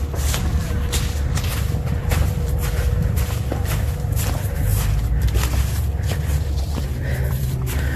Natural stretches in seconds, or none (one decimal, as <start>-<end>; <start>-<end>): 4.7-6.6